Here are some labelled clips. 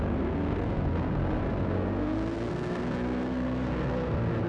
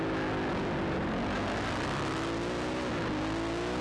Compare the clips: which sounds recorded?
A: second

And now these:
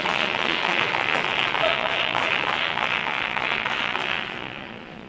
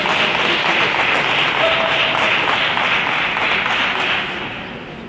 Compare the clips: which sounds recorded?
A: second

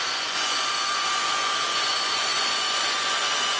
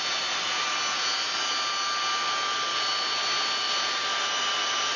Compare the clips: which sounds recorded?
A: second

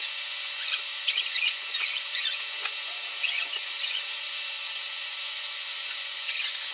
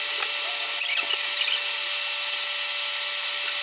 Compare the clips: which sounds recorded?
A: second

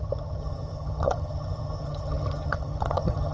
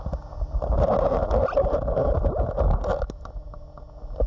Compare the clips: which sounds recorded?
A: second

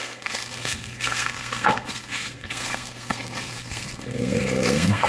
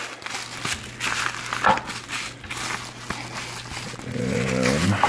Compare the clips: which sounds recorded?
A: second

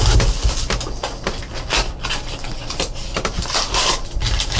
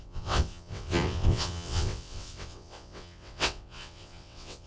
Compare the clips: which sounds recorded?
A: first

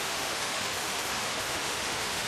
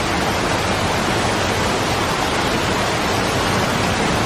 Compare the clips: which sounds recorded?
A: second